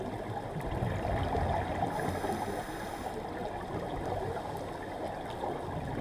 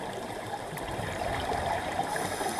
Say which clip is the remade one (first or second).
second